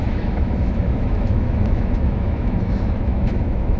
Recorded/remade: remade